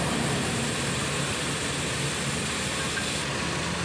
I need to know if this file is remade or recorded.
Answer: recorded